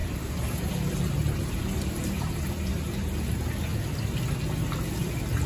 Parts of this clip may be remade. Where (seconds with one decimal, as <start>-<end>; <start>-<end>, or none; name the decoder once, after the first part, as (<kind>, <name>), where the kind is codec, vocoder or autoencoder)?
0.0-3.3 (vocoder, BigVGAN v2)